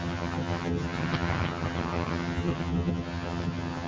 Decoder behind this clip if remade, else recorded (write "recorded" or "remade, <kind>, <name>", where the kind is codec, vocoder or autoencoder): remade, vocoder, HiFi-GAN